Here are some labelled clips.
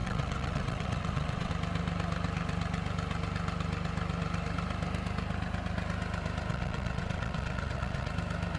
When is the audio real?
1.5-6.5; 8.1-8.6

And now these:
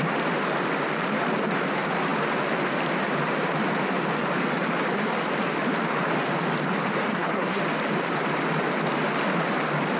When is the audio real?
0.0-7.1; 7.6-10.0

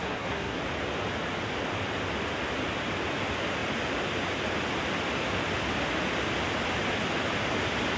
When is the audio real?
0.6-8.0